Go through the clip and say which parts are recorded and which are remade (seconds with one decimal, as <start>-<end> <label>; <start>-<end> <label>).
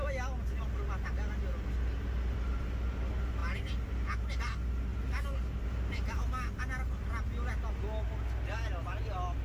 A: 0.0-9.4 recorded